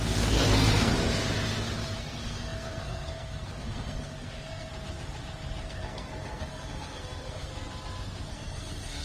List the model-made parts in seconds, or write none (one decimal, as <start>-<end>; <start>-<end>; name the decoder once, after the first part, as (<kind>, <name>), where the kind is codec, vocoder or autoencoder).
0.0-0.9 (codec, SNAC); 2.0-4.7; 5.6-7.5; 8.3-9.0